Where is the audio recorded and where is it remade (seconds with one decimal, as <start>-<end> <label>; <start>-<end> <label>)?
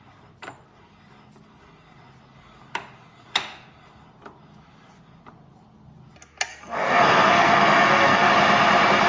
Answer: 0.0-6.5 recorded; 6.5-8.3 remade; 8.3-9.1 recorded